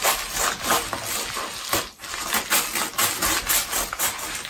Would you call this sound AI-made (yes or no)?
no